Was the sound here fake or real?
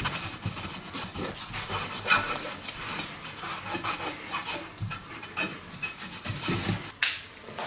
real